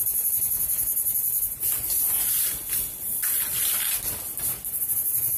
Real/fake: real